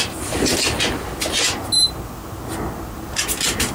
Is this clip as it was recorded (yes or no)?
yes